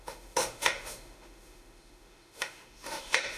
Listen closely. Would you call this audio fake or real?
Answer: fake